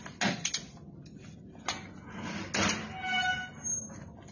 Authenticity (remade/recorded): recorded